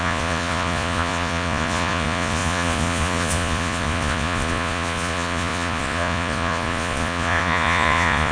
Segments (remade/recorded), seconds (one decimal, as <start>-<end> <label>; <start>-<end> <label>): 0.0-8.3 remade